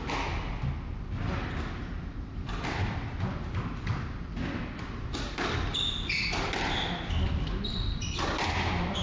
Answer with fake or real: real